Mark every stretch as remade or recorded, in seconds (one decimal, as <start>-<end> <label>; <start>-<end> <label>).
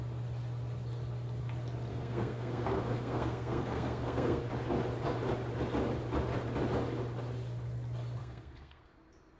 0.0-1.9 recorded; 1.9-4.4 remade; 4.4-8.2 recorded; 8.2-8.9 remade; 8.9-9.4 recorded